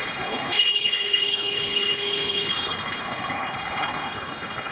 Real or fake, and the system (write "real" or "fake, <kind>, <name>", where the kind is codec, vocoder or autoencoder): fake, codec, HILCodec